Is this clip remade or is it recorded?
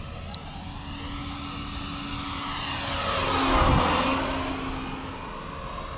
recorded